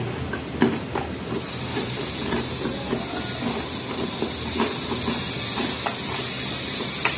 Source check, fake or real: real